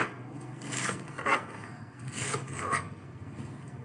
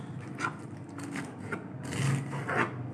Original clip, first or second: second